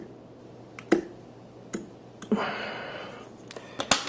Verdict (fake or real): real